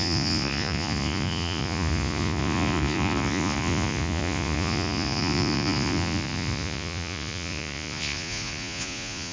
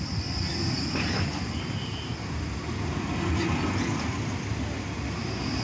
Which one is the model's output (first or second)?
first